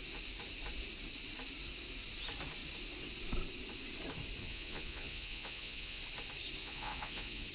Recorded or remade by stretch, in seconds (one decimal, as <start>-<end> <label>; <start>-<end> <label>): 0.0-4.4 recorded; 4.4-6.0 remade; 6.0-6.6 recorded; 6.6-7.5 remade